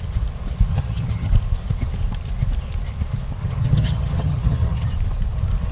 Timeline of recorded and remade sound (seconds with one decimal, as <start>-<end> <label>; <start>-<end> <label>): 0.0-0.7 recorded; 0.7-1.3 remade; 1.3-3.4 recorded; 3.4-4.9 remade; 4.9-5.7 recorded